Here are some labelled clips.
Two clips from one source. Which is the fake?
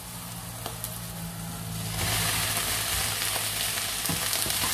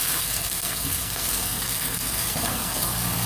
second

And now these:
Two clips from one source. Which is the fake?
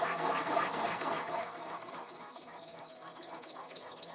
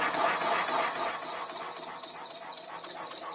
first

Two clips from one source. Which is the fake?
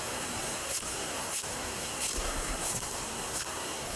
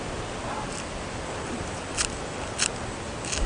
first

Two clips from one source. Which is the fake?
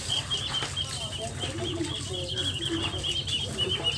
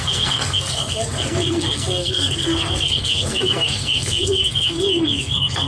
second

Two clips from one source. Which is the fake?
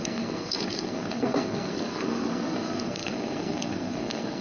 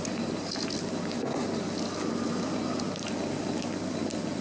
first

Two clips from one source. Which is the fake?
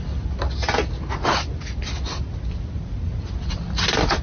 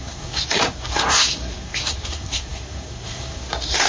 second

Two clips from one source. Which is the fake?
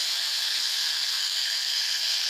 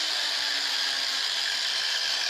first